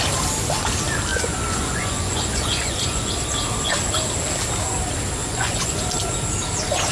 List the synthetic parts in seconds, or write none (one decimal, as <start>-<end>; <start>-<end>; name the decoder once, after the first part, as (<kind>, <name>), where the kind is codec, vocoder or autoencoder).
1.1-3.1 (vocoder, Vocos); 5.2-5.8